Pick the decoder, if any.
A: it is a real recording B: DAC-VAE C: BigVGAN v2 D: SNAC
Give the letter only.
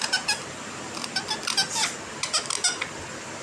A